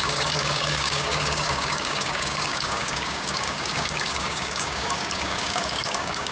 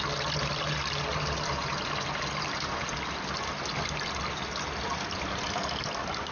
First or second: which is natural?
second